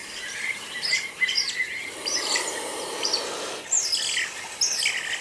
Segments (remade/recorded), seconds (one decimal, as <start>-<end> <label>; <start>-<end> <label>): 0.0-3.1 remade; 3.1-5.2 recorded